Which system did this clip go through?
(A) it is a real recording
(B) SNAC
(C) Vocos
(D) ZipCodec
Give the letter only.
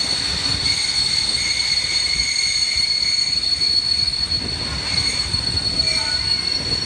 A